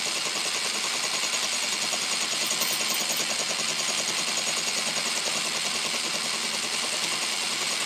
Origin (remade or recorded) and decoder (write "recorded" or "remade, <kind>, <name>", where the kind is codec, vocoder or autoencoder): recorded